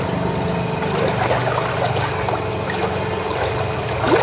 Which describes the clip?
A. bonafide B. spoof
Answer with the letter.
A